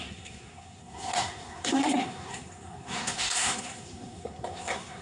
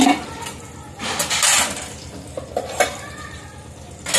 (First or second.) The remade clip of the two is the first